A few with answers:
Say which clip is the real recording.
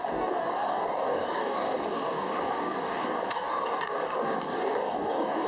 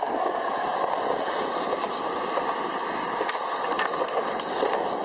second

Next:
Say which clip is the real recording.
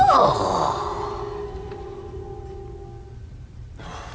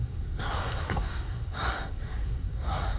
first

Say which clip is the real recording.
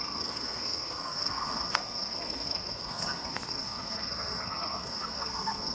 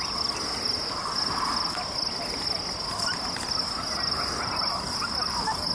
second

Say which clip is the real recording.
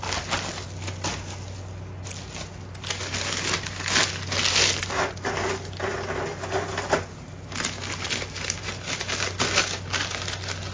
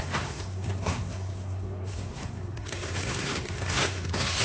first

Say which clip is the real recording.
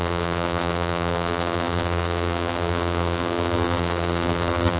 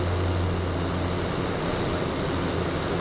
second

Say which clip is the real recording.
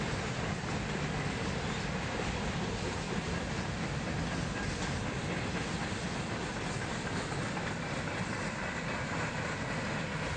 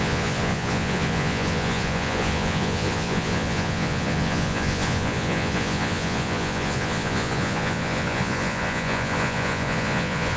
first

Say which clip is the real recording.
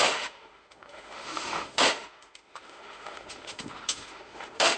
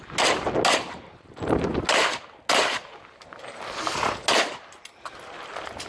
second